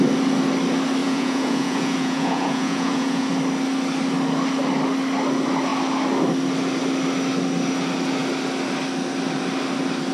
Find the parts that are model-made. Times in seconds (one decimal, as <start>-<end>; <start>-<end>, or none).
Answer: 1.0-3.3